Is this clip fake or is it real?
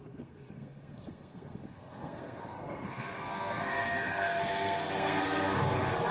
fake